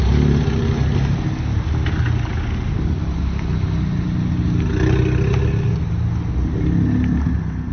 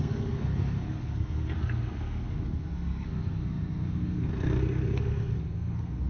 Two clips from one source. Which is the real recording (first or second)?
first